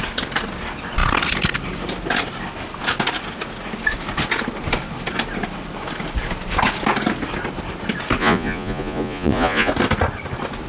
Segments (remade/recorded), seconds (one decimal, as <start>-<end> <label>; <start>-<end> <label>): 0.0-8.2 recorded; 8.2-9.7 remade; 9.7-10.7 recorded